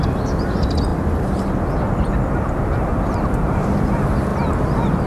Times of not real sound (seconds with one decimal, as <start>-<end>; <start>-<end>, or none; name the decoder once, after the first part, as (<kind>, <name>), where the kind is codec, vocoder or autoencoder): none